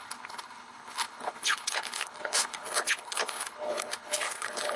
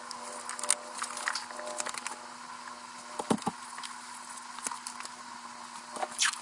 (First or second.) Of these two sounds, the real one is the second